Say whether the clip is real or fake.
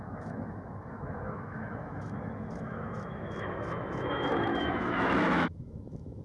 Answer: fake